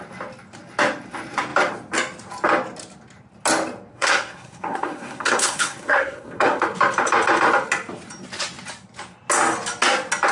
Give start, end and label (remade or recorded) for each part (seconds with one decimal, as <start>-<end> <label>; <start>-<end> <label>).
0.0-3.9 recorded; 3.9-6.6 remade; 6.6-10.3 recorded